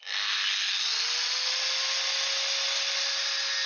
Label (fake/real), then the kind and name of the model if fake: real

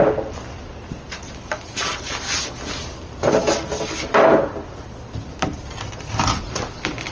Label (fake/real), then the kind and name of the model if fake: real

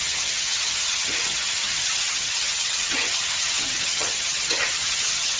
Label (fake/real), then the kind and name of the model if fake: fake, vocoder, HiFi-GAN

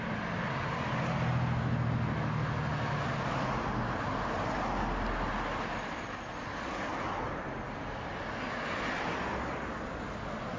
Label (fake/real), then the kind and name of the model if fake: real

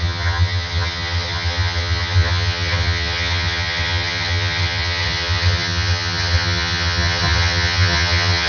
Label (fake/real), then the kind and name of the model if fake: fake, vocoder, HiFi-GAN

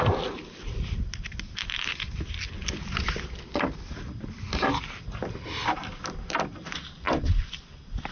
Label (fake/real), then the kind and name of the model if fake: real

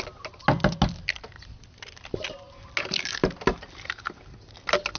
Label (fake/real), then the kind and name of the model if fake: real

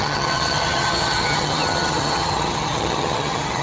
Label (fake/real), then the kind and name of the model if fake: fake, vocoder, HiFi-GAN